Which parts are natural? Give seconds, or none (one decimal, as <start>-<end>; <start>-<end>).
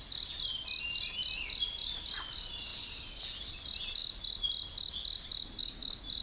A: 0.0-6.2